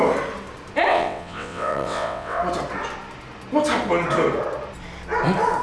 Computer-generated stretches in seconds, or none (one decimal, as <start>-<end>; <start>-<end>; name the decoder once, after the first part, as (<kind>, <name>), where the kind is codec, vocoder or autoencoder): 0.9-2.4 (vocoder, WaveNeXt)